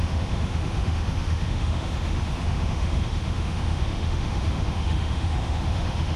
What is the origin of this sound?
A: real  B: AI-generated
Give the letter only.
B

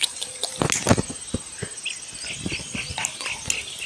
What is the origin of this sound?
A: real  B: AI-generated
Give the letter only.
A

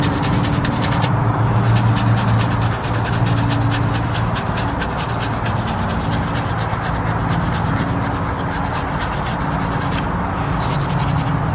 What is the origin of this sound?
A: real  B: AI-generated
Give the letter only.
A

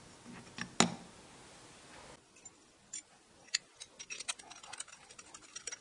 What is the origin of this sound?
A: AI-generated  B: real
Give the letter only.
B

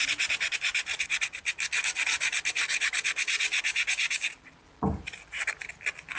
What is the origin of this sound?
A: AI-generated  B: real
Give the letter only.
B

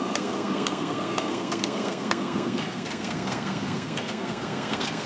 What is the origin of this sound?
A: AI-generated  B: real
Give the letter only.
A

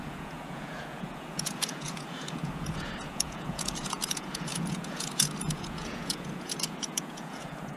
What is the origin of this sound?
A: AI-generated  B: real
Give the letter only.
A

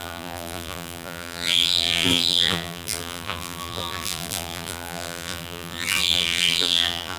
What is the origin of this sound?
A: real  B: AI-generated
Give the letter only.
B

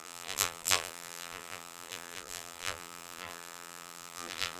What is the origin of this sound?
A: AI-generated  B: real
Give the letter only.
A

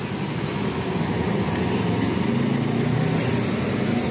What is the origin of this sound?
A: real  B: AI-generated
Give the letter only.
A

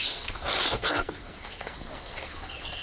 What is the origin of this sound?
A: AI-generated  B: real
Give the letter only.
A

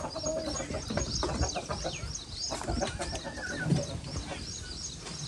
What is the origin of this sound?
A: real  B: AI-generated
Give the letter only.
A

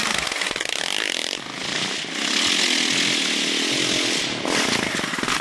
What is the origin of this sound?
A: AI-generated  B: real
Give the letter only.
B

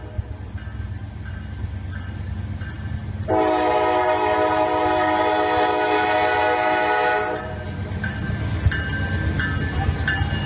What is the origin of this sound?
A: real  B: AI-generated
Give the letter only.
A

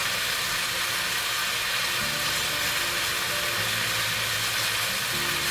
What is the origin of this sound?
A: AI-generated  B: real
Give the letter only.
B